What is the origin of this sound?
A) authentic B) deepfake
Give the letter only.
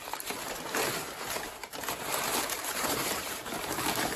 B